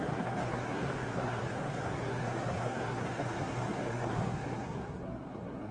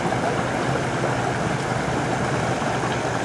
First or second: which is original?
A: second